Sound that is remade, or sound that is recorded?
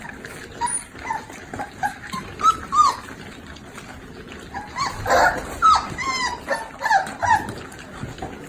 recorded